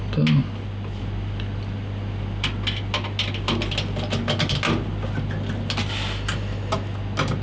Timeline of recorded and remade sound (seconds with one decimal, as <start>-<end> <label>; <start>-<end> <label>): 0.0-7.4 recorded